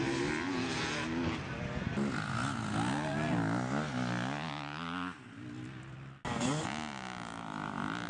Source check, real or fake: real